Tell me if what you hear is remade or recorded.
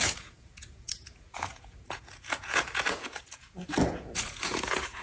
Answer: remade